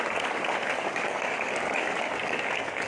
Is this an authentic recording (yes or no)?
no